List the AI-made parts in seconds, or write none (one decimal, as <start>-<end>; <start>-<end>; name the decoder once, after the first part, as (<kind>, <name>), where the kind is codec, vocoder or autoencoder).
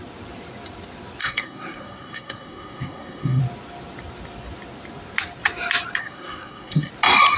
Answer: 1.2-3.4 (codec, SNAC); 6.0-6.9